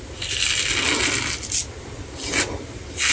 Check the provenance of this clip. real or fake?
real